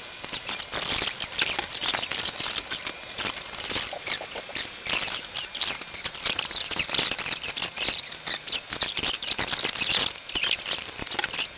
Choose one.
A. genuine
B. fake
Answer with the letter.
A